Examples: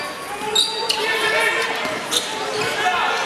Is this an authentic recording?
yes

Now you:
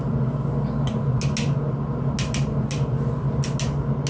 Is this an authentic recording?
yes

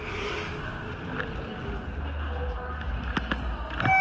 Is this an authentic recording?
yes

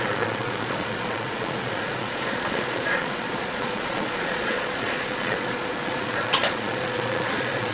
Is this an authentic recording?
no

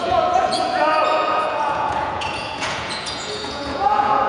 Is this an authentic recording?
no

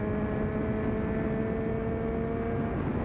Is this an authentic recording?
yes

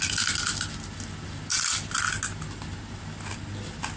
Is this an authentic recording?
yes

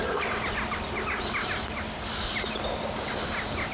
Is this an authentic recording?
yes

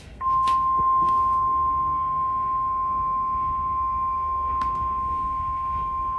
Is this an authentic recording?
no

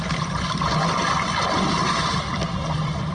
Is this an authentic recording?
yes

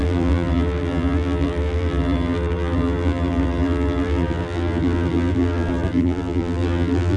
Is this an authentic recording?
no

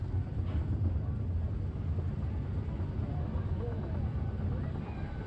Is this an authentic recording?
yes